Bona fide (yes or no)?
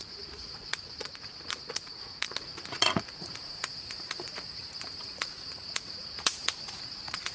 no